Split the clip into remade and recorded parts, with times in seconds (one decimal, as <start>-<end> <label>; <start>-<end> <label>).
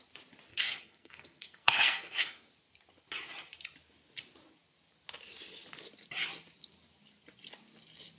0.0-0.5 recorded; 0.5-2.5 remade; 2.5-8.2 recorded